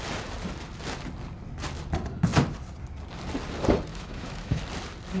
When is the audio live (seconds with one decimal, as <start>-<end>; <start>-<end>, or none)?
0.0-3.9; 4.6-5.2